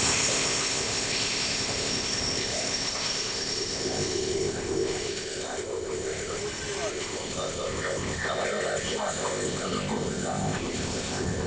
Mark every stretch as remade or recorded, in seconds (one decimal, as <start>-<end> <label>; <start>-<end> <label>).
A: 0.0-6.4 remade; 6.4-6.9 recorded; 6.9-11.5 remade